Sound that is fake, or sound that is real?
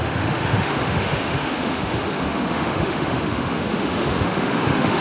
fake